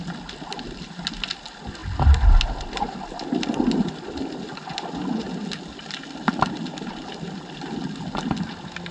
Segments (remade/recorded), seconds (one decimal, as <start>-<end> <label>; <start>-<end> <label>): 0.0-8.9 recorded